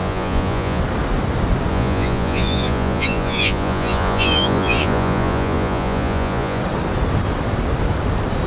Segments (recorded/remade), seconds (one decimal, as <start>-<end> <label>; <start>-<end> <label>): 0.0-0.8 remade; 0.8-1.7 recorded; 1.7-6.6 remade; 6.6-8.5 recorded